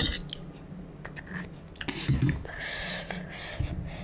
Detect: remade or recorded recorded